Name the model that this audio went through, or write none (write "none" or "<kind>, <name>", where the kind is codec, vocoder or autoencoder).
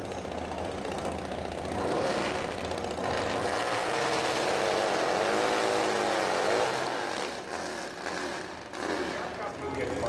none